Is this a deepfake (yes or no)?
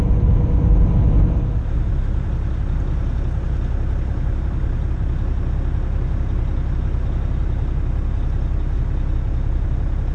no